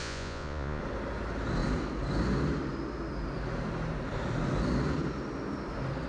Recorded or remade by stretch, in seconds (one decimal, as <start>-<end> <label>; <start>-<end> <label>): 0.0-0.8 remade; 0.8-6.1 recorded